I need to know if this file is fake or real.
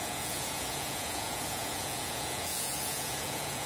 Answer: fake